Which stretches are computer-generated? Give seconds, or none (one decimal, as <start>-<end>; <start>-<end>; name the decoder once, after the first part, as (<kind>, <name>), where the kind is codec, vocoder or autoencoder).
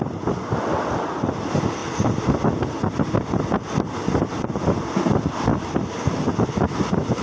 none